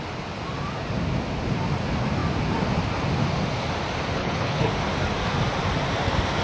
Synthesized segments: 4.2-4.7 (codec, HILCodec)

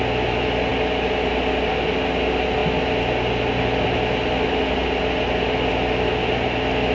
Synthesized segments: none

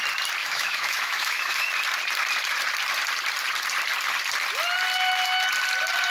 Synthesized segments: 0.4-1.7 (autoencoder, DAC-VAE)

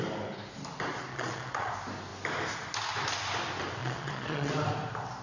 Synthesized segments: 1.1-1.7 (vocoder, Vocos); 3.8-4.5

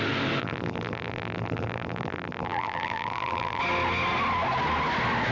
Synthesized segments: 0.4-3.6 (vocoder, BigVGAN v2)